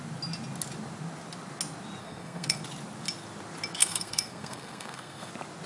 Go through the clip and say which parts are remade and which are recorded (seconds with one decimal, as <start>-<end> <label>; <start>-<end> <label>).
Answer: 0.0-2.0 recorded; 2.0-2.6 remade; 2.6-3.8 recorded; 3.8-5.3 remade; 5.3-5.7 recorded